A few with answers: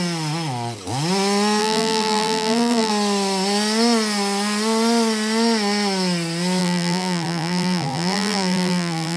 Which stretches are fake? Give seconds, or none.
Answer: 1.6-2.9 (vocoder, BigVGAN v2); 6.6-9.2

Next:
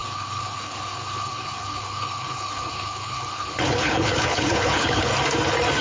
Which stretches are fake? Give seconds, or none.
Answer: 0.0-5.1 (codec, HILCodec)

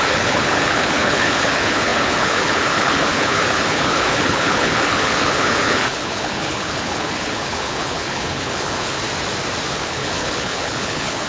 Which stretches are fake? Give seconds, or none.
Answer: 0.0-9.0 (codec, HILCodec); 9.7-11.3

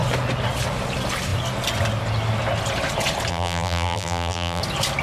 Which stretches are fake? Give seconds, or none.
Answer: 3.3-4.6 (vocoder, BigVGAN v2)